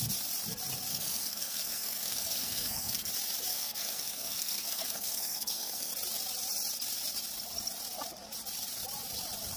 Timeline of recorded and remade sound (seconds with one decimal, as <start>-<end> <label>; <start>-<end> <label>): 0.0-0.9 recorded; 0.9-3.1 remade; 3.1-3.5 recorded; 3.5-5.9 remade; 5.9-9.6 recorded